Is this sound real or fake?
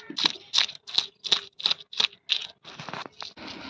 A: real